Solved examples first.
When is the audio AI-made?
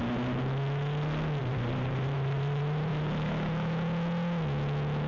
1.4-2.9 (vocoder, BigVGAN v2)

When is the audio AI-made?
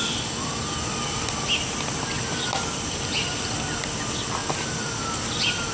none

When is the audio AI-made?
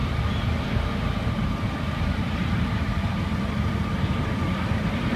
0.0-3.1 (vocoder, BigVGAN v2)